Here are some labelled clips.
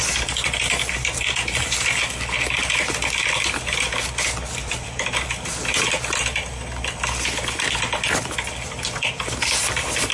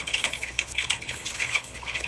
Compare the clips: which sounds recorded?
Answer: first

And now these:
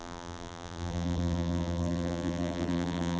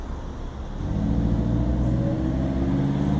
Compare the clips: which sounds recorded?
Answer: second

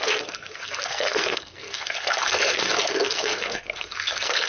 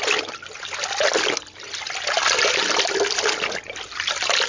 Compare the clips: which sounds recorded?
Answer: second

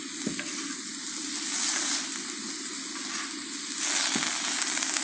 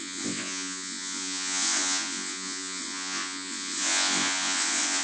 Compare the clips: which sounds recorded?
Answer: first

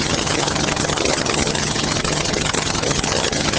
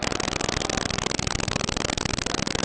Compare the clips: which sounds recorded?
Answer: second